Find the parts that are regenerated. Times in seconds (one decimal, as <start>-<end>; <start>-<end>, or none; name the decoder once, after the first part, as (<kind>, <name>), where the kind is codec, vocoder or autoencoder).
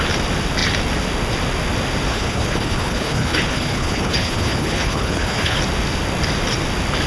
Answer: 2.1-5.6 (codec, HILCodec)